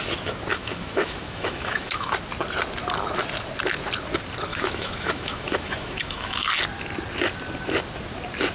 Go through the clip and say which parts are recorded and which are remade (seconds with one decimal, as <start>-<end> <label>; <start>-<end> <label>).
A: 0.0-0.5 recorded; 0.5-2.1 remade; 2.1-4.5 recorded; 4.5-6.5 remade; 6.5-8.5 recorded